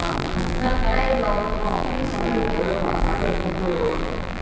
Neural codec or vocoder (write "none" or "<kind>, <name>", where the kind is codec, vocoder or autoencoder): vocoder, BigVGAN v2